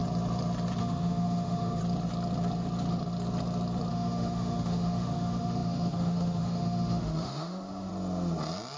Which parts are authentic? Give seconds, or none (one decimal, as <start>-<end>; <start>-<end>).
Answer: 0.0-0.8; 1.8-3.9; 7.9-8.8